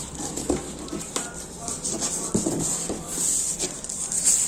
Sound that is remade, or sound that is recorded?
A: recorded